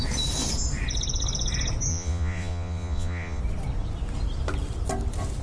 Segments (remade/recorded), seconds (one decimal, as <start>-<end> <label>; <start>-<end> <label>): 0.0-1.9 recorded; 1.9-3.4 remade; 3.4-5.4 recorded